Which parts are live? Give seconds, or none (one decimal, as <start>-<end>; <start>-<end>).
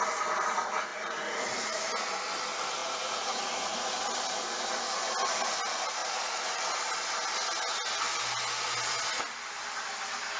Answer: 0.0-0.9; 1.8-2.8; 3.9-6.0; 6.6-10.4